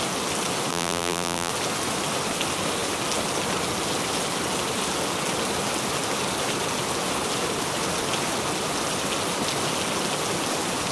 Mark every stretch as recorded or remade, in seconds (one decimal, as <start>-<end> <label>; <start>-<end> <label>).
0.0-0.7 recorded; 0.7-1.5 remade; 1.5-10.9 recorded